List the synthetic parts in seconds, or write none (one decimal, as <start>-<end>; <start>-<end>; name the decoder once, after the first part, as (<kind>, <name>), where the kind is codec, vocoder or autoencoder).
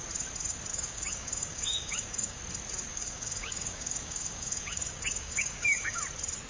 0.7-2.4 (codec, DAC); 2.9-6.0